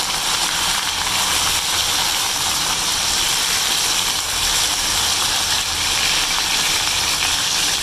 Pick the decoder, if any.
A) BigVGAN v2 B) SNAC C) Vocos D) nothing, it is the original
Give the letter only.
A